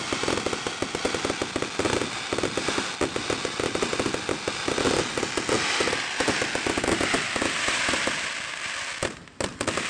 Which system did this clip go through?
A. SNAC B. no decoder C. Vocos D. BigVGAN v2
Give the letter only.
B